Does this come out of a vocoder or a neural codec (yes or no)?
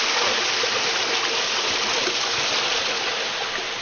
no